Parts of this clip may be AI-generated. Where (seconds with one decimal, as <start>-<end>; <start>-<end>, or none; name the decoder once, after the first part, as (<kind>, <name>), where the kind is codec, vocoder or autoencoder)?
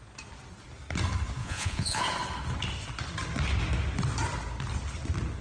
1.4-2.0 (vocoder, Vocos)